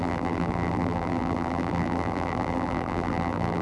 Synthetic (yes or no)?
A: yes